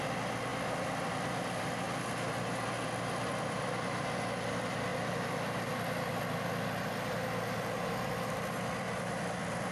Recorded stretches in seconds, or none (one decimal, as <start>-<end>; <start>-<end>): 0.0-9.7